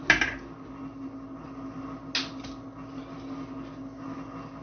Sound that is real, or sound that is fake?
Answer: real